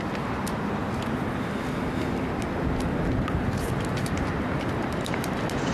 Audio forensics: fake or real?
real